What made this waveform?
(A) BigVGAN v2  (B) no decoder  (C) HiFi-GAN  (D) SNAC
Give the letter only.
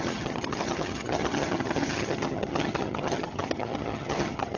C